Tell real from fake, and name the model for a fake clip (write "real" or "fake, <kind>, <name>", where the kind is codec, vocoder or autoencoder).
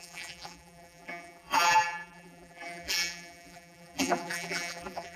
fake, vocoder, BigVGAN v2